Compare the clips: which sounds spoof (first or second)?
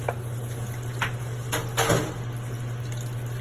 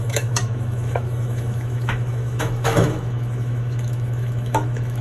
second